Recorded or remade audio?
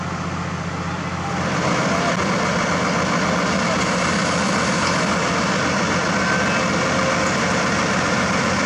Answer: recorded